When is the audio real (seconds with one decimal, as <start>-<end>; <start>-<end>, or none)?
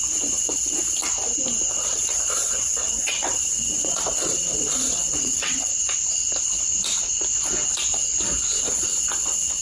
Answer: 1.0-1.7; 5.7-8.6